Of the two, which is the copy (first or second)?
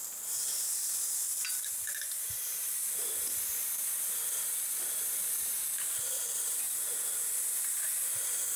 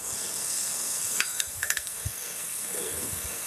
second